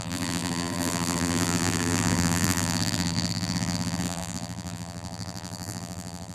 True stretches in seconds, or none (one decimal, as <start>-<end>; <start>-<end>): none